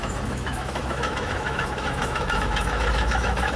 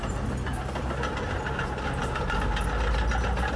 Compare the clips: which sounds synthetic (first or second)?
first